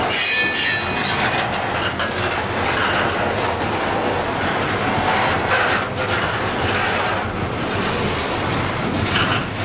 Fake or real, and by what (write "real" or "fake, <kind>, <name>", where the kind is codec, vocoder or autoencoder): real